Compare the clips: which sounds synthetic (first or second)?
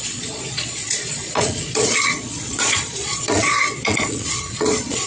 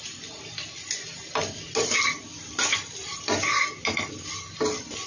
first